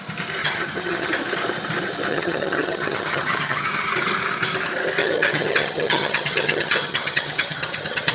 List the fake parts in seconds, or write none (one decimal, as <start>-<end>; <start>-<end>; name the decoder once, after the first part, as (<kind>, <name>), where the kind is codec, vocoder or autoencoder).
0.4-1.1 (vocoder, HiFi-GAN); 2.1-3.9; 5.0-8.1